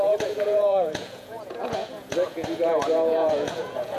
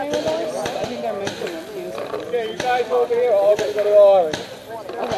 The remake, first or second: first